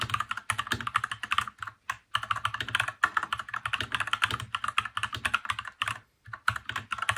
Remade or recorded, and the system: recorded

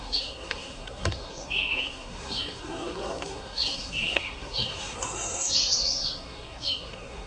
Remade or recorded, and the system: remade, codec, SNAC